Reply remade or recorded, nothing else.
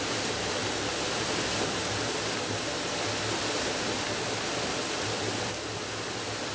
recorded